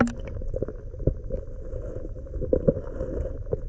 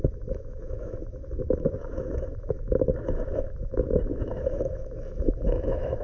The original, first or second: first